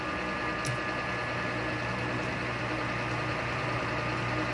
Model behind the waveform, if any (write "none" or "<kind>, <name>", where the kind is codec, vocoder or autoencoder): none